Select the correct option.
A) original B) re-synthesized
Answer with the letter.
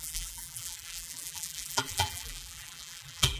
B